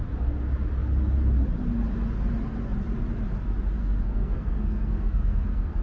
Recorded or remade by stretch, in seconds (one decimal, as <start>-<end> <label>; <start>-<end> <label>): 0.0-3.8 recorded; 3.8-5.8 remade